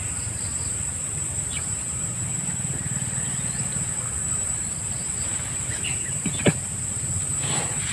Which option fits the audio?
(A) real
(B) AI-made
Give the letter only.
B